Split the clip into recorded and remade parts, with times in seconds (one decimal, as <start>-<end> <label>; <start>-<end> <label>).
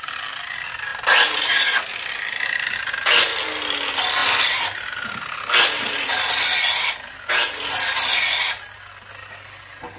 0.0-10.0 recorded